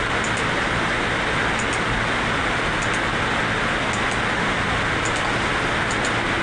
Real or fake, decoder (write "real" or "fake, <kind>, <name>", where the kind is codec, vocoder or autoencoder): real